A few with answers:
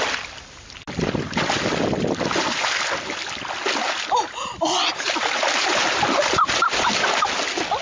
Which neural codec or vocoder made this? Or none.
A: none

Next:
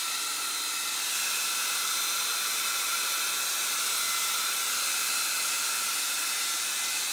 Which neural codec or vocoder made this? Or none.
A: none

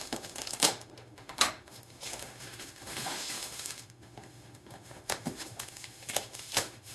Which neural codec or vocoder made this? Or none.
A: autoencoder, DAC-VAE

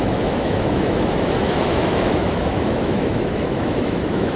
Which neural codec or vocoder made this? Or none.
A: autoencoder, DAC-VAE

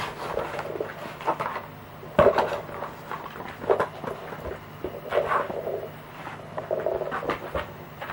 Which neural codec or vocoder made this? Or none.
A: none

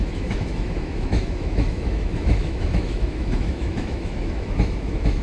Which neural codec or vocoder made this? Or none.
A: autoencoder, DAC-VAE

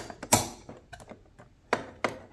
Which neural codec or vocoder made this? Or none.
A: none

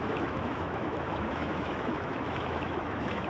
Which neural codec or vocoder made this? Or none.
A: autoencoder, DAC-VAE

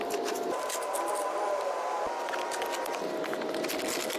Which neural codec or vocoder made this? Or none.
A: none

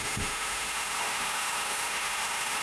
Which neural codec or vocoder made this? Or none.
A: autoencoder, DAC-VAE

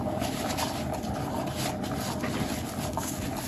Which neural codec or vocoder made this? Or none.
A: none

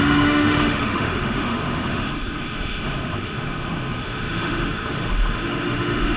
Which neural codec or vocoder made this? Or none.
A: autoencoder, DAC-VAE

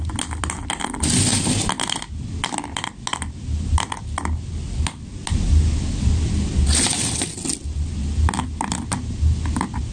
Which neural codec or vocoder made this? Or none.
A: none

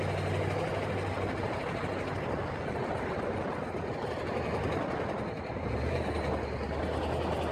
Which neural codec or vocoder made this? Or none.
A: none